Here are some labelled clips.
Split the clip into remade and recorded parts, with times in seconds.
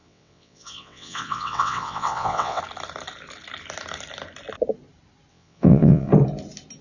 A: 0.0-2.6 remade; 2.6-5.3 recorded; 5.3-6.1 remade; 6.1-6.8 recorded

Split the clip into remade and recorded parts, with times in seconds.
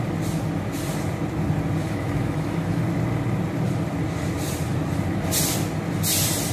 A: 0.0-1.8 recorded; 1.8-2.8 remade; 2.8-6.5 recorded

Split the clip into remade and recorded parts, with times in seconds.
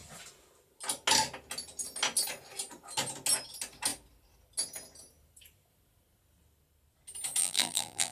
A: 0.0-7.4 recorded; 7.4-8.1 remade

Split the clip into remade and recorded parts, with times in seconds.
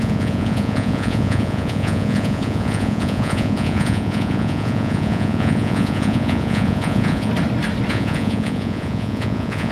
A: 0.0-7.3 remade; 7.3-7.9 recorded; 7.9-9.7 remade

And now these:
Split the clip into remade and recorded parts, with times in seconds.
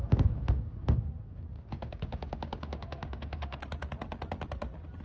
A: 0.0-5.0 recorded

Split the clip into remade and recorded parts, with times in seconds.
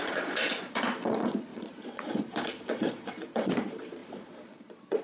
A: 0.0-5.0 remade